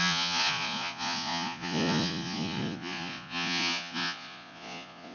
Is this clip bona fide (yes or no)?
no